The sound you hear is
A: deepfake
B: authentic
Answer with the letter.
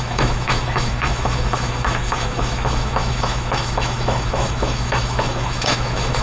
A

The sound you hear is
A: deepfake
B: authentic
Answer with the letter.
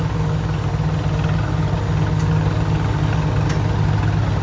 B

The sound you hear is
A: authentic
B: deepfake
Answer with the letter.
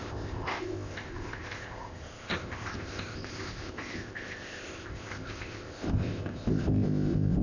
B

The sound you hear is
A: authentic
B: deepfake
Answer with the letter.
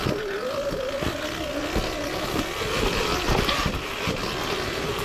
A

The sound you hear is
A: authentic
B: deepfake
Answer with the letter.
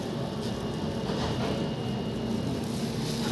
A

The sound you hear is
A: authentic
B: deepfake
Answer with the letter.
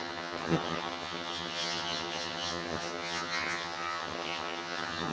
B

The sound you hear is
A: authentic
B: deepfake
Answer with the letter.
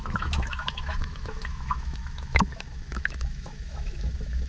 B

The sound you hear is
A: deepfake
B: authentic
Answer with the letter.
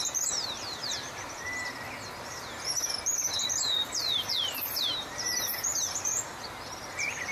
A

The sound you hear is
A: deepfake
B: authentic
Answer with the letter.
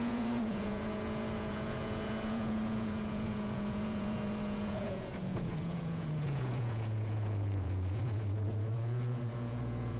A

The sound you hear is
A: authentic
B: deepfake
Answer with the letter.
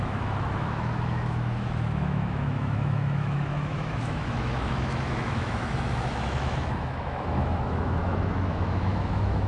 B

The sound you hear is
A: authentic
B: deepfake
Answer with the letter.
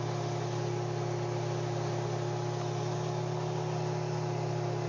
A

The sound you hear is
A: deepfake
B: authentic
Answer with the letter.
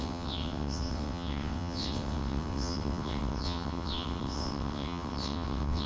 A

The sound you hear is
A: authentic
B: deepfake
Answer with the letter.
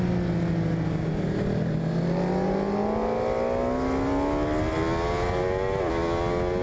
A